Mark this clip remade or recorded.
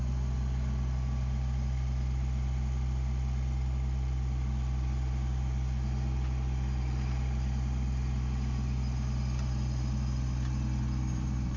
recorded